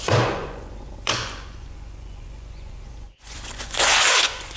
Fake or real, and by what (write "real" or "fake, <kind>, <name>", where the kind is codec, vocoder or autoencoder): fake, vocoder, Vocos